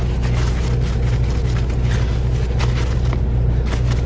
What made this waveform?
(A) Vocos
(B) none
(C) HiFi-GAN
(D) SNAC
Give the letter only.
B